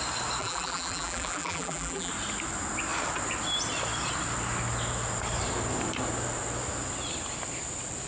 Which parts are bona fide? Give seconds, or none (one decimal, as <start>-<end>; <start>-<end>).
0.0-0.4; 2.1-8.1

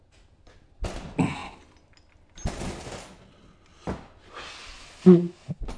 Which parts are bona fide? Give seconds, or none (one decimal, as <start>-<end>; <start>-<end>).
0.0-5.8

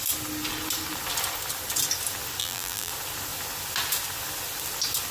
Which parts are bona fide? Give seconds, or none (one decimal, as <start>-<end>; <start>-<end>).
0.0-2.4; 2.9-5.1

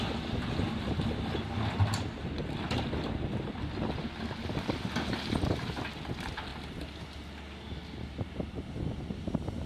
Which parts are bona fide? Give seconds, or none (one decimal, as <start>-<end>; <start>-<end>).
0.0-6.5; 8.3-9.7